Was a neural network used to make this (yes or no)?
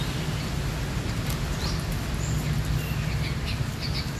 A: no